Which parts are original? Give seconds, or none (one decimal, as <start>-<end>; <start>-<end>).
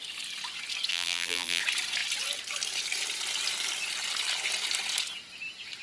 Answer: 0.0-0.9; 1.6-5.8